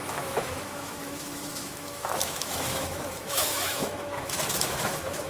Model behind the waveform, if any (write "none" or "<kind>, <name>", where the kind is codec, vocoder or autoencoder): autoencoder, DAC-VAE